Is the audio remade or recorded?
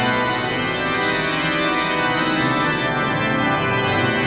recorded